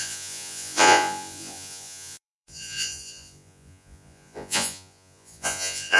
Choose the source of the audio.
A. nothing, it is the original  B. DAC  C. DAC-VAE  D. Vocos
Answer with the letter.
D